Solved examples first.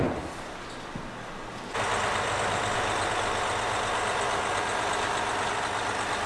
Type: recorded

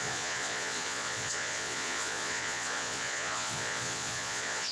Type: remade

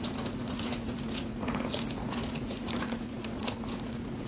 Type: remade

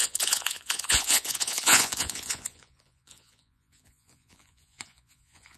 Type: remade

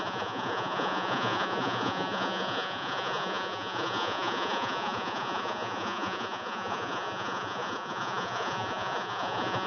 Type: remade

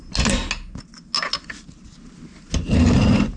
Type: recorded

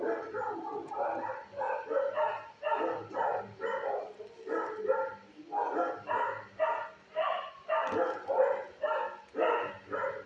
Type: recorded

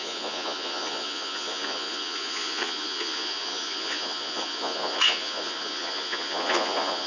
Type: remade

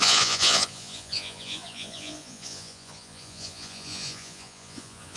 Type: remade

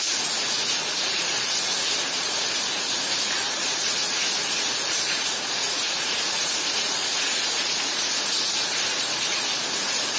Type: remade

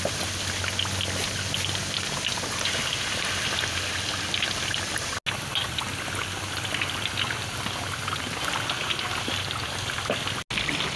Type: recorded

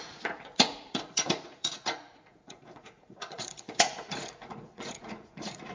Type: remade